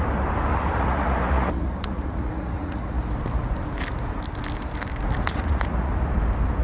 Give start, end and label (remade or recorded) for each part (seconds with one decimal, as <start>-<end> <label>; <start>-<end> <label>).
0.0-0.5 recorded; 0.5-3.0 remade; 3.0-5.3 recorded; 5.3-5.9 remade; 5.9-6.6 recorded